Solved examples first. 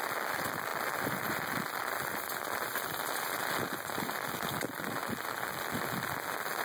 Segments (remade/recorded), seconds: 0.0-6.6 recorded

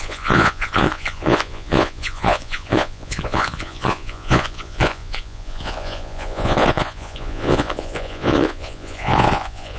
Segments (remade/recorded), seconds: 0.0-9.8 remade

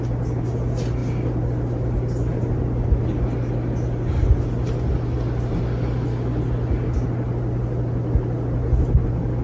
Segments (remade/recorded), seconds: 0.0-9.4 recorded

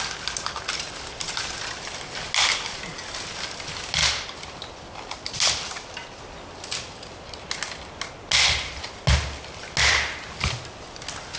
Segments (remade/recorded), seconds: 0.0-11.4 recorded

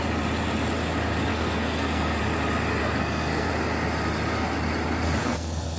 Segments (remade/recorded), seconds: 0.0-1.3 recorded; 1.3-2.2 remade; 2.2-2.8 recorded; 2.8-3.5 remade; 3.5-5.2 recorded; 5.2-5.8 remade

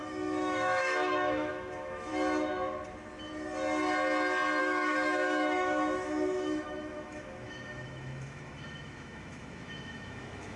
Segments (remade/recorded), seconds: 0.0-2.1 remade; 2.1-4.6 recorded; 4.6-10.6 remade

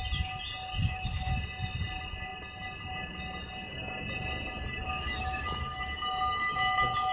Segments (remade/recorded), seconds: 0.0-0.8 recorded; 0.8-1.3 remade; 1.3-4.8 recorded; 4.8-5.8 remade; 5.8-7.1 recorded

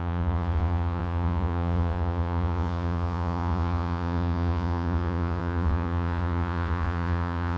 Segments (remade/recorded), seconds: 0.0-7.6 remade